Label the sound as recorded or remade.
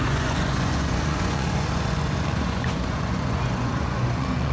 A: remade